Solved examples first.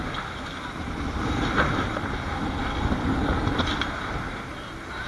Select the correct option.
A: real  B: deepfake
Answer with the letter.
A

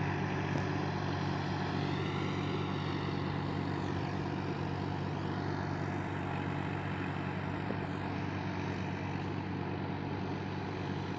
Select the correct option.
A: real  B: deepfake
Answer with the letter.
A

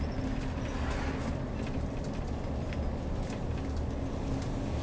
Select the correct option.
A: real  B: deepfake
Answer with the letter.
A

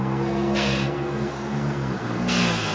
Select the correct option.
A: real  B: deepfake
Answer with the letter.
B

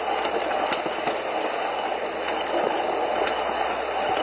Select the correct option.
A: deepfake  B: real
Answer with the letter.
B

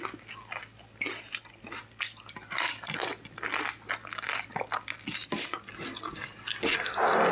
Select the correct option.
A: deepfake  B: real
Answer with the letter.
B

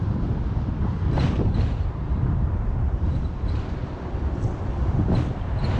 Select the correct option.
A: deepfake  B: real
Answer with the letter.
A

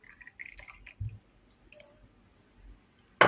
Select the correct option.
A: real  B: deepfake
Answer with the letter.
A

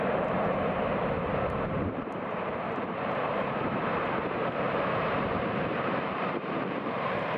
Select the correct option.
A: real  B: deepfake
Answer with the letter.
B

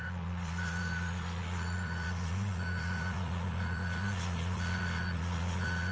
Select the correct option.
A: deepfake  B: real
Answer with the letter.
A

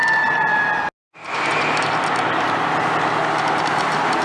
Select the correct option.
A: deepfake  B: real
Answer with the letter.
B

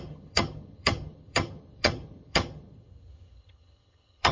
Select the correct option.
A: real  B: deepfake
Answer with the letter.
B